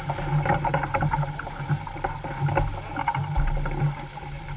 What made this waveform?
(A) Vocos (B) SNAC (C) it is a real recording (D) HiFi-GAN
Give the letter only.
C